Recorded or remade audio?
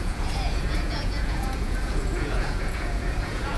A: remade